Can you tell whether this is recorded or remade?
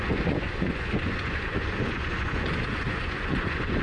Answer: remade